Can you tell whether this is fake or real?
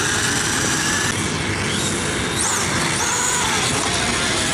real